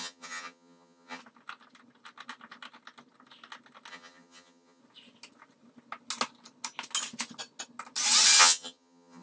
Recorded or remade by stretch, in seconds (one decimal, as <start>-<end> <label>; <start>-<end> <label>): 0.0-1.2 remade; 1.2-3.9 recorded; 3.9-4.8 remade; 4.8-8.4 recorded; 8.4-9.2 remade

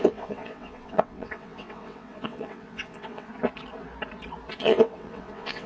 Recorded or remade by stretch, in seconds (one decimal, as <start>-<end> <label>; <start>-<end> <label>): 0.0-3.3 remade; 3.3-4.6 recorded; 4.6-5.7 remade

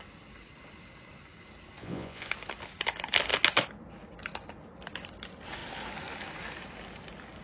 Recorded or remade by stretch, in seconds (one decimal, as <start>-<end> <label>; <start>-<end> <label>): 0.0-1.8 recorded; 1.8-2.3 remade; 2.3-7.4 recorded